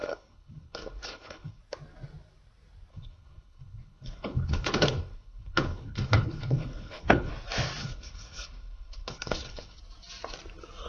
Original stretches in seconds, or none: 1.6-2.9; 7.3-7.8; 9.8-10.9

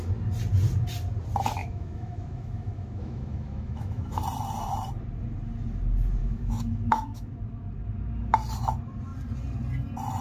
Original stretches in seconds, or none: 0.0-1.6; 4.2-6.2; 7.4-10.2

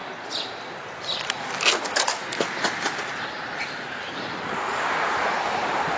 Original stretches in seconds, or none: 0.0-6.0

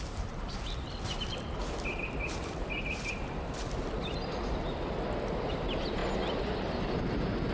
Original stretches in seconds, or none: 0.0-7.5

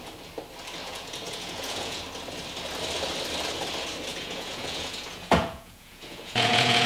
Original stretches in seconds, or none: 0.0-0.8; 2.0-4.1

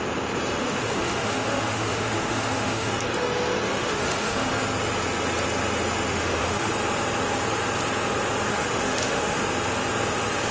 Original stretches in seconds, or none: 0.0-0.6; 2.9-3.7; 4.5-6.1; 6.7-8.5; 9.4-10.5